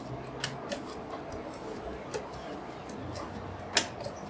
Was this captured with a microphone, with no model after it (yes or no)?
yes